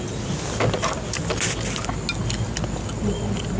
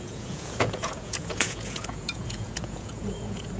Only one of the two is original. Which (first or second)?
first